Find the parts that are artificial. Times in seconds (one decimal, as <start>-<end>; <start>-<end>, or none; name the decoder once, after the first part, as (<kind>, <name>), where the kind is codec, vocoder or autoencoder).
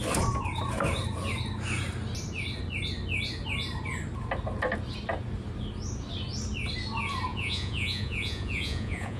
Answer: 7.3-9.2 (vocoder, Vocos)